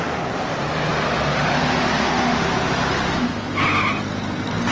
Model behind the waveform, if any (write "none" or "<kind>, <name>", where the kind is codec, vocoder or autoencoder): none